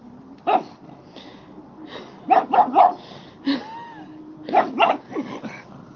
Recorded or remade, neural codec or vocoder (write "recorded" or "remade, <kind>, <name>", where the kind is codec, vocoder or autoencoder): recorded